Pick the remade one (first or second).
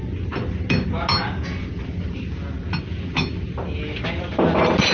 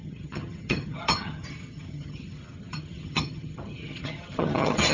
second